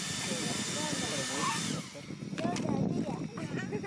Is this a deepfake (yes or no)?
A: no